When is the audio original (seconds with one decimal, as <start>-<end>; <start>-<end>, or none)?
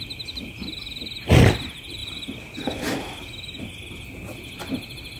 0.0-5.2